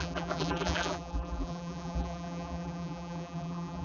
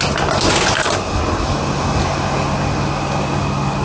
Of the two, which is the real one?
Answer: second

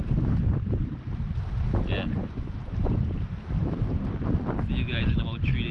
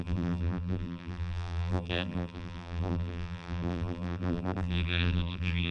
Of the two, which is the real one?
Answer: first